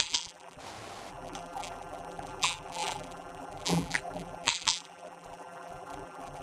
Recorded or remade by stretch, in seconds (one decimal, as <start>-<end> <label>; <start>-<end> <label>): 0.0-0.6 remade; 0.6-1.1 recorded; 1.1-6.4 remade